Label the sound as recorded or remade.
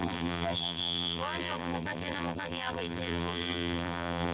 remade